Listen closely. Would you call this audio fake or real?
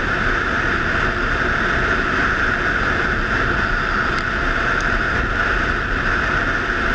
real